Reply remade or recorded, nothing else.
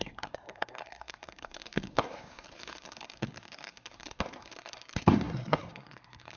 remade